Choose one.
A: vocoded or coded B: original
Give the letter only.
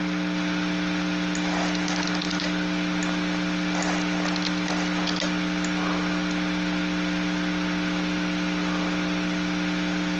B